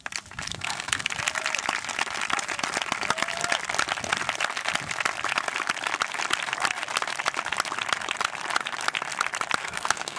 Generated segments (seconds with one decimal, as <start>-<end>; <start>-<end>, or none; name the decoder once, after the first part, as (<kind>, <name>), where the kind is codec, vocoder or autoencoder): 0.5-1.1 (codec, SNAC); 9.6-10.2